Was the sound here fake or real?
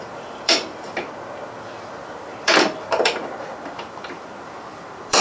fake